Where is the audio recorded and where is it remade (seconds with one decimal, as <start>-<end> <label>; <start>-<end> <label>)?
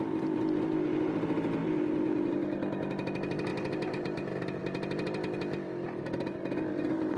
0.0-1.6 recorded; 1.6-2.3 remade; 2.3-3.5 recorded; 3.5-4.6 remade; 4.6-7.2 recorded